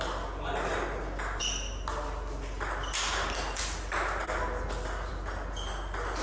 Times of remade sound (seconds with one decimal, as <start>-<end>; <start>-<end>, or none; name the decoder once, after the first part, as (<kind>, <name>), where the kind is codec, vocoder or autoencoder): none